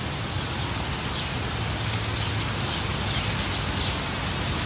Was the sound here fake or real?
real